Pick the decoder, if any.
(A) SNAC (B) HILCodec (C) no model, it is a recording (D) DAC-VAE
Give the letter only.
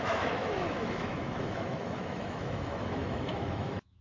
D